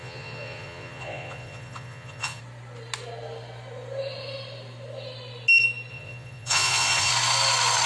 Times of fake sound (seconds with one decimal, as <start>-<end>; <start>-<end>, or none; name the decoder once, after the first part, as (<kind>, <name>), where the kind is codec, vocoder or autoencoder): 0.0-2.4 (vocoder, Vocos); 5.9-7.1